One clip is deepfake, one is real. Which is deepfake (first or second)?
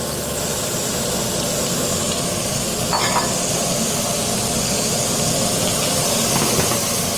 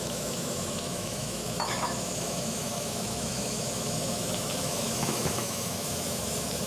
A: second